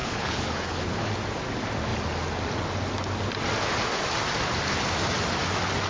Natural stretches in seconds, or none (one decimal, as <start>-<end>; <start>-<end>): 1.1-5.9

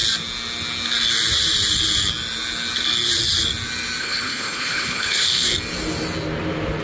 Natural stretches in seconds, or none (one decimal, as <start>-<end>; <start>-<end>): 0.0-4.0; 5.5-6.8

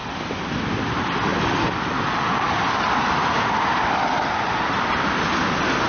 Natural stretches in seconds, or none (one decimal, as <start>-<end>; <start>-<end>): 0.0-5.9

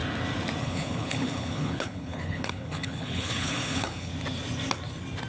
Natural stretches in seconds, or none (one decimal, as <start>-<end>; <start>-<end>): 0.0-0.6; 4.1-5.3

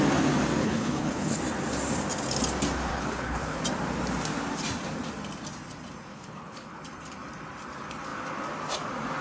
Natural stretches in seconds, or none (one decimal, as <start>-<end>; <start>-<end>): 0.0-0.6; 1.4-2.9; 3.6-6.1; 6.8-9.2

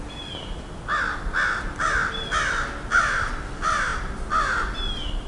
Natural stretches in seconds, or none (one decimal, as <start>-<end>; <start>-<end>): 0.0-5.3

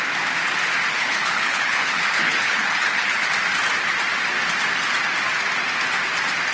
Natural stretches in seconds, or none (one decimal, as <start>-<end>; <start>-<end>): 0.0-0.9; 3.3-6.5